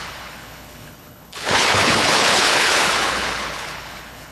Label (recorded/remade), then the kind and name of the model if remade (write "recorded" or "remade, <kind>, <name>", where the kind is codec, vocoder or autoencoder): remade, codec, HILCodec